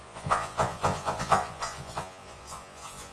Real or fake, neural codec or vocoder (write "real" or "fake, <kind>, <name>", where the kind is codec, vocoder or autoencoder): fake, vocoder, Vocos